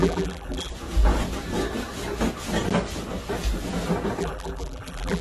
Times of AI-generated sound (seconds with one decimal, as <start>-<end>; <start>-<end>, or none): 0.0-0.7; 4.2-5.2